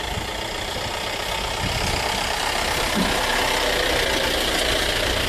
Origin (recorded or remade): recorded